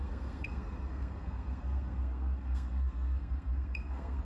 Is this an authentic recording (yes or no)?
no